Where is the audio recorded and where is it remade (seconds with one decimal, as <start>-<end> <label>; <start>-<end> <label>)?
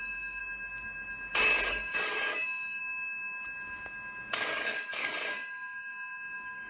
0.0-0.4 remade; 0.4-1.7 recorded; 1.7-2.8 remade; 2.8-4.3 recorded; 4.3-6.7 remade